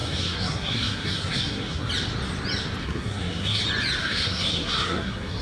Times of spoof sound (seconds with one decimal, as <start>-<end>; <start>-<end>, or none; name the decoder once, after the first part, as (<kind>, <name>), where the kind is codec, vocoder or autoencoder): 0.0-1.9 (codec, SNAC); 2.8-3.6; 4.0-5.4